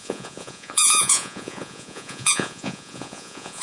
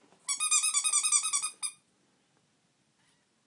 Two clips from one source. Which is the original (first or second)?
second